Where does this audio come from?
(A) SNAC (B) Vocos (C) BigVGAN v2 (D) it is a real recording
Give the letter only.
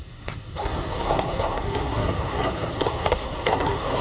A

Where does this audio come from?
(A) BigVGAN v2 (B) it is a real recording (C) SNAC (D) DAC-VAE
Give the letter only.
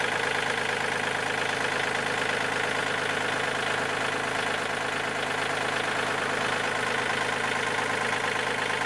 B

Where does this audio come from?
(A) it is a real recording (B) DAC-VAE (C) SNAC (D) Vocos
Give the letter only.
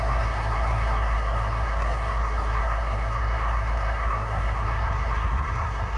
C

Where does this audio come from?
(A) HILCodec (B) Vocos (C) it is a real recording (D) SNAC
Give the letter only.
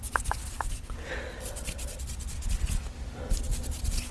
C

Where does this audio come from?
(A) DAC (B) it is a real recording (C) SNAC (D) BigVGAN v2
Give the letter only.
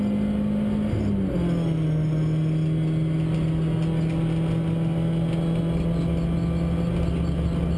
B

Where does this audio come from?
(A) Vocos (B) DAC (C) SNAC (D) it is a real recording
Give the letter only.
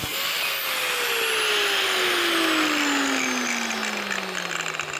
D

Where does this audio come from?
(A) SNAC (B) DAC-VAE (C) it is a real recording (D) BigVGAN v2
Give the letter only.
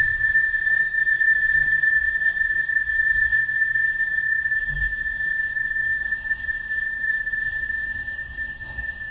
A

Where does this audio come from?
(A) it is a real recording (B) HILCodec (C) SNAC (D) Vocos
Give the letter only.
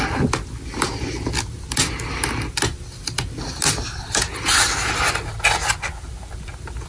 A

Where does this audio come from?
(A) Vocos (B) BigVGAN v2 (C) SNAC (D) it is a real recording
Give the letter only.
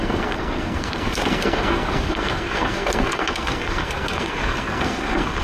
C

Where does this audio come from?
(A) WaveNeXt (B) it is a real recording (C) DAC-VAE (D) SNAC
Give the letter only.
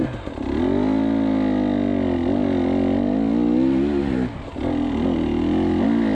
B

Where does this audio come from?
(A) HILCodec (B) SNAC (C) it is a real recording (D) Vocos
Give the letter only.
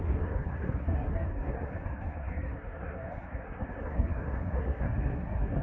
B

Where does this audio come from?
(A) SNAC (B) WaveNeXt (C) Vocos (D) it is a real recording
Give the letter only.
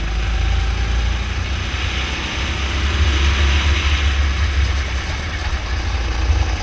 D